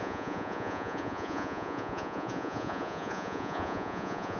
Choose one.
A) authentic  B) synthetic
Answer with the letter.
B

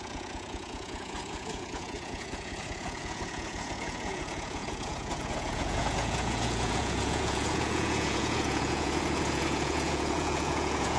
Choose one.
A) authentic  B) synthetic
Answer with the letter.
B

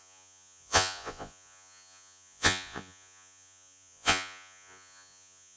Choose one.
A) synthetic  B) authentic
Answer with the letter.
A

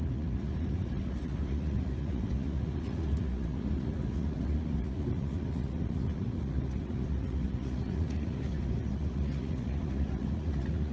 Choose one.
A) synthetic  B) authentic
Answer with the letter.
A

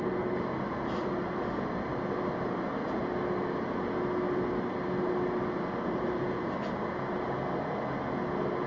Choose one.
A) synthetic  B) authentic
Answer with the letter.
B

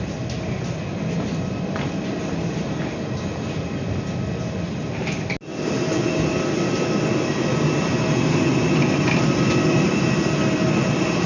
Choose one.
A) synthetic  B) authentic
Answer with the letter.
B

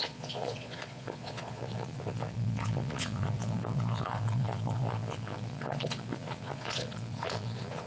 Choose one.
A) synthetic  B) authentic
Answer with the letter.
A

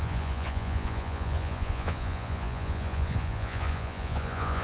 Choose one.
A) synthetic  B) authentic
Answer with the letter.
A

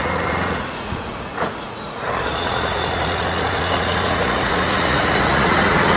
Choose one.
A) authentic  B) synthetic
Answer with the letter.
B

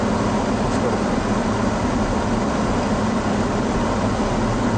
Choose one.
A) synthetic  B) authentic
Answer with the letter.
B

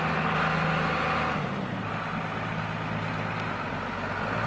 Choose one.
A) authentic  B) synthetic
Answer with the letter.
A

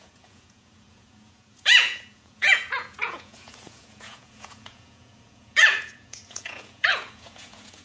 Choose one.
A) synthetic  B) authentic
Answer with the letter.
A